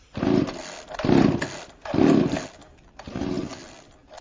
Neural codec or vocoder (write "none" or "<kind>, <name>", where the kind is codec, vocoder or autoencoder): none